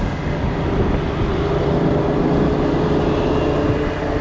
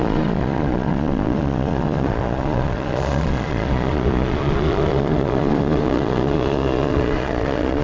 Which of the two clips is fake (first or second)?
second